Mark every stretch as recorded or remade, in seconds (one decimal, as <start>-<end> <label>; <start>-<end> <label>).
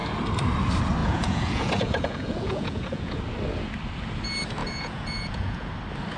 0.0-1.0 recorded; 1.0-3.2 remade; 3.2-4.6 recorded; 4.6-5.7 remade; 5.7-6.2 recorded